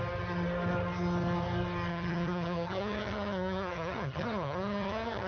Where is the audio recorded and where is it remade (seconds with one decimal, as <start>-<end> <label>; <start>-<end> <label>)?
0.0-1.9 recorded; 1.9-5.3 remade